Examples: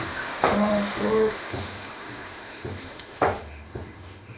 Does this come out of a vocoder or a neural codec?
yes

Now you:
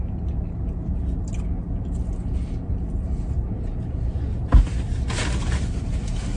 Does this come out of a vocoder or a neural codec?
no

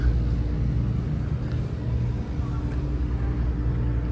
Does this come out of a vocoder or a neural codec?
no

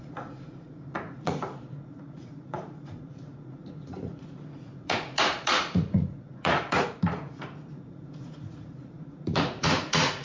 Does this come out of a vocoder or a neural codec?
yes